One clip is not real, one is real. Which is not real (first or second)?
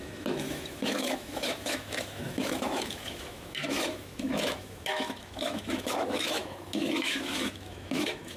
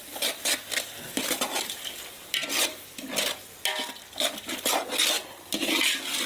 first